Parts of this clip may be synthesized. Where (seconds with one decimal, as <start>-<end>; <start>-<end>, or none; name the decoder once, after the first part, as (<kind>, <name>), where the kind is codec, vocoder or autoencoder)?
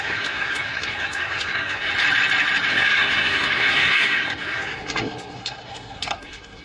0.0-1.9 (codec, SNAC); 2.7-6.6